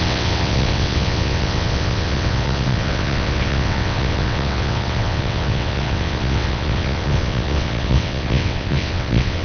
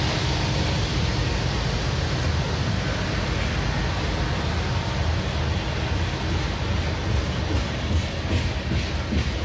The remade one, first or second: first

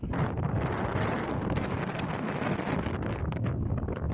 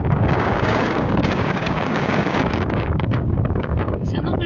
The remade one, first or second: second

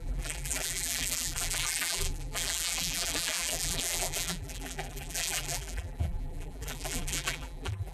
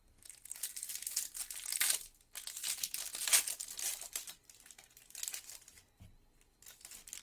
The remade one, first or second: first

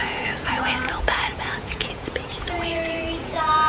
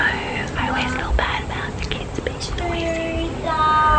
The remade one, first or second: first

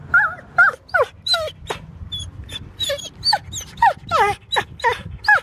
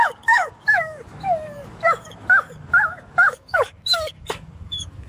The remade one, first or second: second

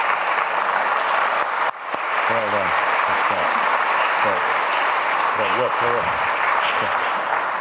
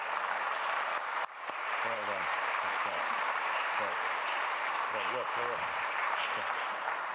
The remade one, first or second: second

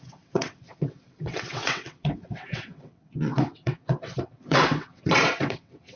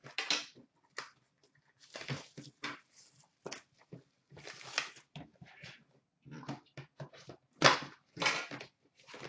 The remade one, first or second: first